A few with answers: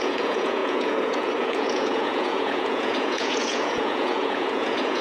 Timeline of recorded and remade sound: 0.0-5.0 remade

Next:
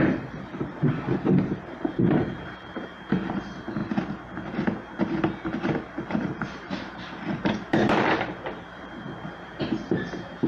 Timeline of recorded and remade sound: 0.0-3.8 remade; 3.8-6.0 recorded; 6.0-10.5 remade